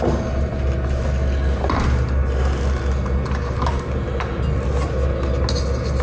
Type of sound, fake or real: real